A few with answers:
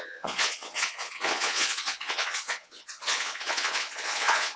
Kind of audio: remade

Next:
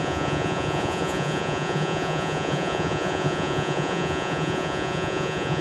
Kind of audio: remade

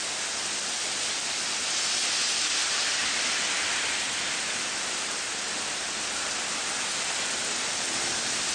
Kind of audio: recorded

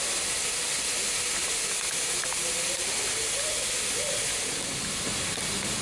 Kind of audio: recorded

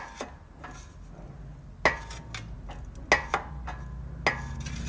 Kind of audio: recorded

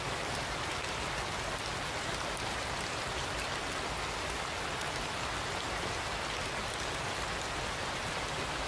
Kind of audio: recorded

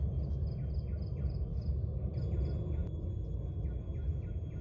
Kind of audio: recorded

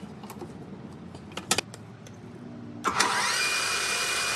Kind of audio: recorded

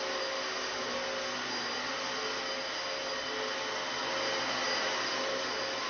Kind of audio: recorded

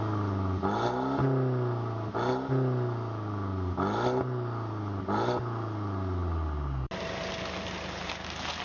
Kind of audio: recorded